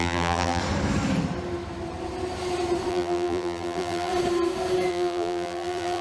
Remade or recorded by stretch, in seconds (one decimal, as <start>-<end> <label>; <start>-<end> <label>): 0.0-0.6 remade; 0.6-2.9 recorded; 2.9-4.1 remade; 4.1-4.9 recorded; 4.9-6.0 remade